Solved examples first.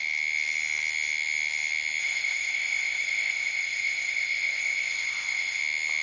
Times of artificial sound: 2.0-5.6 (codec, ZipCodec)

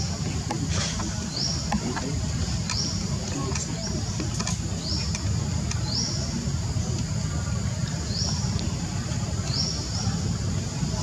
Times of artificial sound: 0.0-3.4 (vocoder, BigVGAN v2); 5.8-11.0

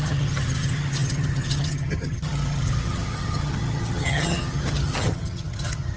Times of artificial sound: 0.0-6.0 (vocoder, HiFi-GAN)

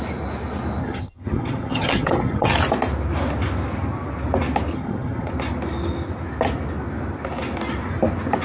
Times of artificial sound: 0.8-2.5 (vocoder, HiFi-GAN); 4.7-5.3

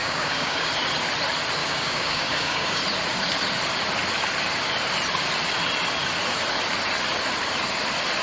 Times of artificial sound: 0.0-0.7 (codec, DAC); 1.6-2.8

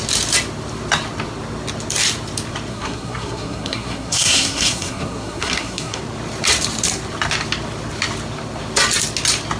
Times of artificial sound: 2.7-6.0 (codec, SNAC)

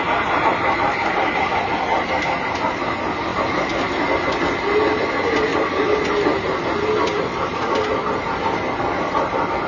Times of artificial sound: none

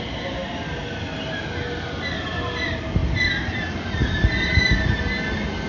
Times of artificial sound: none